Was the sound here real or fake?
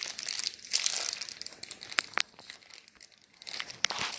real